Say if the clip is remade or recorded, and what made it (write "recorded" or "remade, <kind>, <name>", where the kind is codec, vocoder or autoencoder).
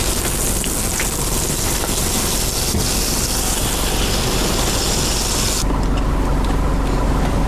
recorded